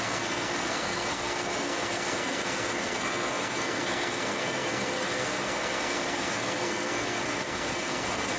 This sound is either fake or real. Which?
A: fake